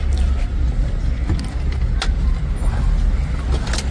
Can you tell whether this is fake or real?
real